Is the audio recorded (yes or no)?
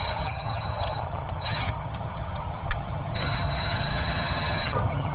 no